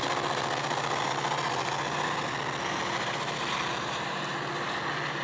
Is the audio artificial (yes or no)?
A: no